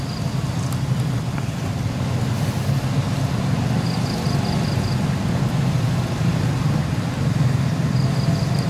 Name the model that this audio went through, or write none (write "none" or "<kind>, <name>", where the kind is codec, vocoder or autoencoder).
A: none